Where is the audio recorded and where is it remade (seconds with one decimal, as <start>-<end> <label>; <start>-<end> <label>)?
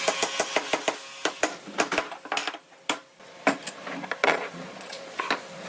0.0-4.2 recorded; 4.2-5.2 remade; 5.2-5.7 recorded